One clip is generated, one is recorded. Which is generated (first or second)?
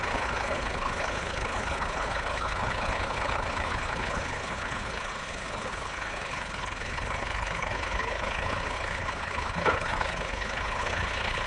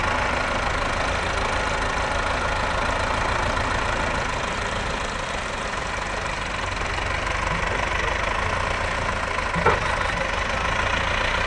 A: first